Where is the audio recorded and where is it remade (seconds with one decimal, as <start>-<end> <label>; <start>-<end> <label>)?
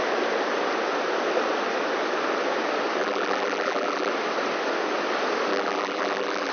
0.0-3.0 recorded; 3.0-4.1 remade; 4.1-5.5 recorded; 5.5-6.5 remade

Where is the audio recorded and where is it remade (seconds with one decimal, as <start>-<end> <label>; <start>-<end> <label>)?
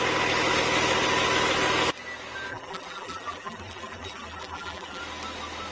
0.0-2.5 recorded; 2.5-5.0 remade; 5.0-5.7 recorded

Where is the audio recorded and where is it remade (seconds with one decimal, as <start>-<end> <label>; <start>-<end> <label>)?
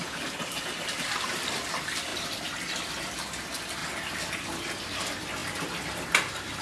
0.0-0.9 recorded; 0.9-3.8 remade; 3.8-4.3 recorded; 4.3-6.6 remade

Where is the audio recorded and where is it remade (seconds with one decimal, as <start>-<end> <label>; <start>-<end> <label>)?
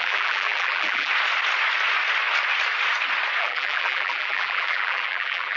0.0-1.1 remade; 1.1-3.4 recorded; 3.4-5.6 remade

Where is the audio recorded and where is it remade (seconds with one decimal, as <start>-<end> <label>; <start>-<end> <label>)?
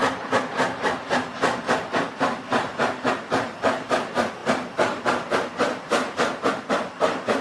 0.0-2.7 remade; 2.7-3.2 recorded; 3.2-7.4 remade